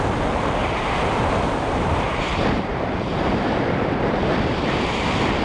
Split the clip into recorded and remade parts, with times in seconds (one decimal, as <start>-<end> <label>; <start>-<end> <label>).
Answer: 0.0-0.6 recorded; 0.6-3.8 remade; 3.8-5.4 recorded